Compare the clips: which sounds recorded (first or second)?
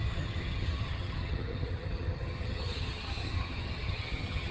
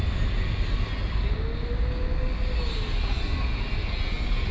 second